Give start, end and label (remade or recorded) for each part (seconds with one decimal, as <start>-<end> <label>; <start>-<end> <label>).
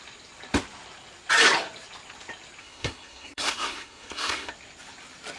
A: 0.0-2.6 recorded; 2.6-4.5 remade; 4.5-5.4 recorded